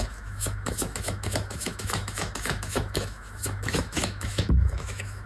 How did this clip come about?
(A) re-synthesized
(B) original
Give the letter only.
A